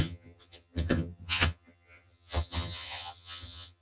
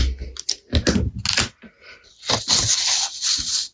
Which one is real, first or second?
second